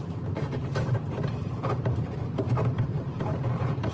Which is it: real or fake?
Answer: fake